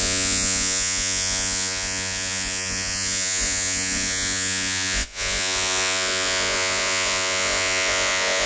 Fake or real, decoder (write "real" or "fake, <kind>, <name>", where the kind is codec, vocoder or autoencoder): fake, vocoder, Vocos